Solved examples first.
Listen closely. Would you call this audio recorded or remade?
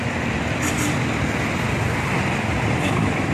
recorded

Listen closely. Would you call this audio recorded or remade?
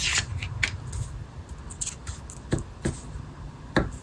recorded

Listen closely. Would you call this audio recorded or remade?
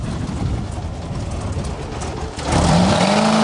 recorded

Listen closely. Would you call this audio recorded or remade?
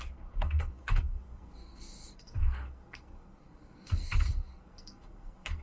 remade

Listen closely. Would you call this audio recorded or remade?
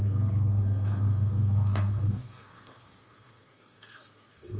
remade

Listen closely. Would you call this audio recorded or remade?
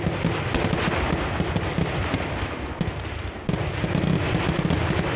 recorded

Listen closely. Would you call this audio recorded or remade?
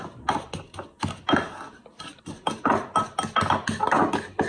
recorded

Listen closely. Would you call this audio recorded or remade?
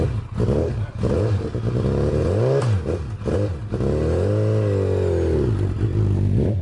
recorded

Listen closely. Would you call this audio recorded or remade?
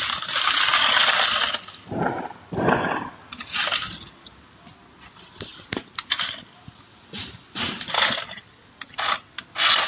recorded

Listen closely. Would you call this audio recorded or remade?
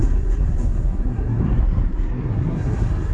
remade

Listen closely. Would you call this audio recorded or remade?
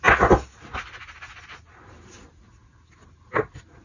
recorded